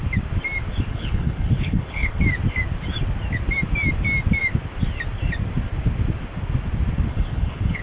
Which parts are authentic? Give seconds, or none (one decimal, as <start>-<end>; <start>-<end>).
0.0-0.9; 2.2-7.1